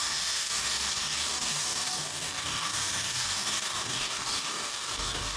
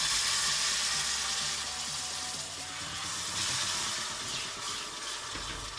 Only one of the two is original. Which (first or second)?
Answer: second